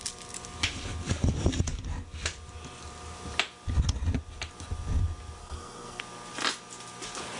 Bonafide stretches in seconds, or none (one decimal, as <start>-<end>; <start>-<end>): 0.0-5.4; 6.0-7.4